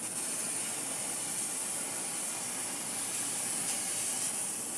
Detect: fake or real real